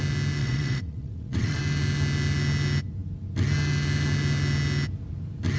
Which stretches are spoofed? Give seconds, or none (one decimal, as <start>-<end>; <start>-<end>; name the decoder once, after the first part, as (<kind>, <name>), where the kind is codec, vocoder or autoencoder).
0.4-1.6 (vocoder, WaveNeXt)